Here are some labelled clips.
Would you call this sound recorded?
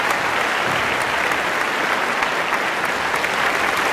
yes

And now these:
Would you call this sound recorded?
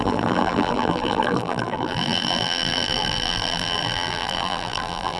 no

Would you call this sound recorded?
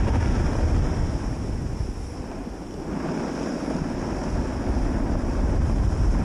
yes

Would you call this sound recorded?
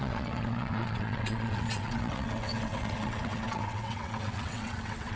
no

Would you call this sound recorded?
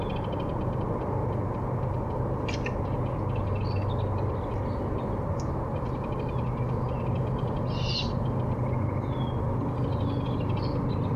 yes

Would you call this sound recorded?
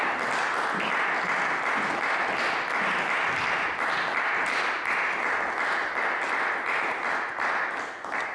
yes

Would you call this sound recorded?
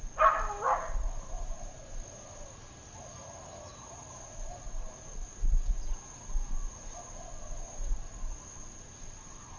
yes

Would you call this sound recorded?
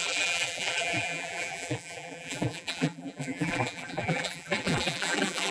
no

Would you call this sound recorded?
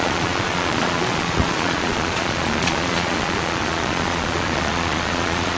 no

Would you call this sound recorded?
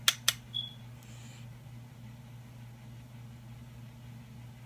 yes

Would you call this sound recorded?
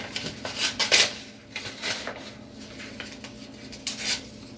yes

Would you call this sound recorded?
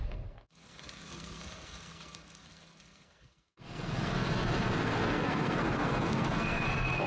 no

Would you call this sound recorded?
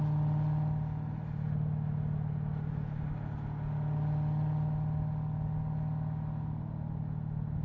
yes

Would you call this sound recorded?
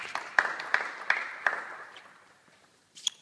no